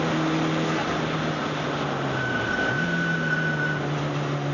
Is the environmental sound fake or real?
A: real